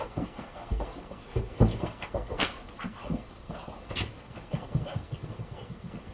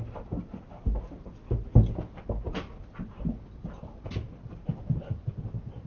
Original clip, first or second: second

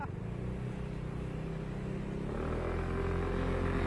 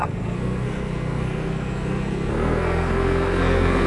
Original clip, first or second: first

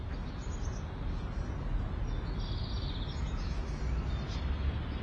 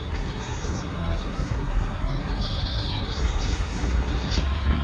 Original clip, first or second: first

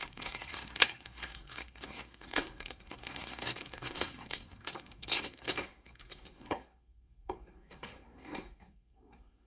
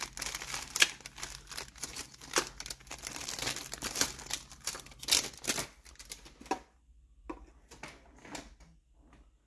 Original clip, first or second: second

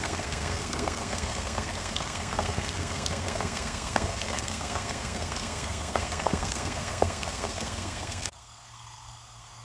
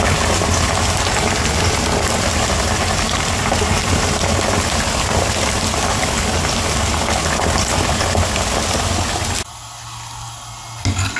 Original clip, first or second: second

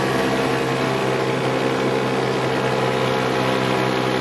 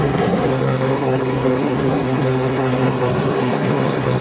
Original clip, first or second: first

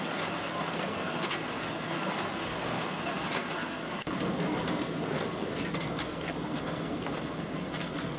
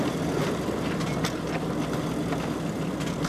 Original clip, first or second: second